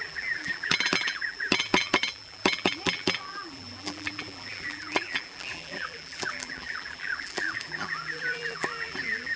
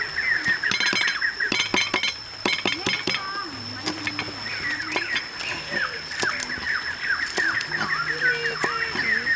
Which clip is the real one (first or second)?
second